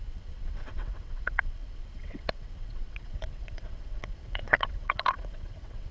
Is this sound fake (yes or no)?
yes